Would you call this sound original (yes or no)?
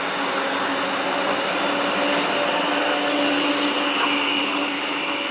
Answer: yes